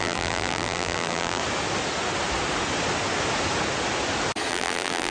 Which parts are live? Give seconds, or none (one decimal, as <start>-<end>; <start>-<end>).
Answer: 1.4-4.5